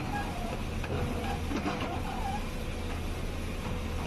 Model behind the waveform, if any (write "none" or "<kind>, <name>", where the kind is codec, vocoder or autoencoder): none